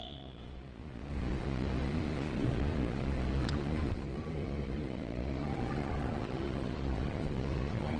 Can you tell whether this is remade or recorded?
remade